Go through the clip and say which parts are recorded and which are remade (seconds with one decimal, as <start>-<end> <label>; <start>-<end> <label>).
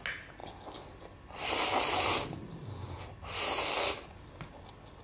0.0-5.0 recorded